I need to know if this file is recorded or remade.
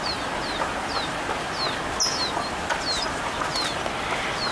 recorded